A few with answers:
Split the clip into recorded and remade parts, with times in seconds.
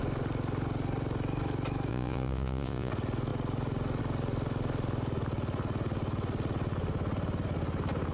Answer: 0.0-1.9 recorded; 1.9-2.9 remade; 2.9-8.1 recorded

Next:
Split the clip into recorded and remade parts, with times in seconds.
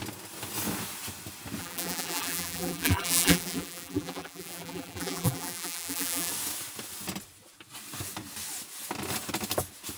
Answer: 0.0-1.6 recorded; 1.6-6.3 remade; 6.3-10.0 recorded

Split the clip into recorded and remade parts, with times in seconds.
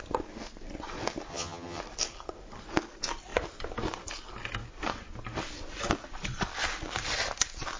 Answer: 0.0-1.3 recorded; 1.3-1.8 remade; 1.8-7.8 recorded